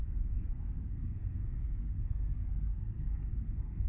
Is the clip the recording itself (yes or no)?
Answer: no